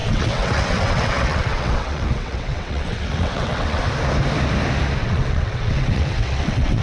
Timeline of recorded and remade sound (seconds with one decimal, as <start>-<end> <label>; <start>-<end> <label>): 0.0-3.8 remade; 3.8-5.0 recorded; 5.0-6.8 remade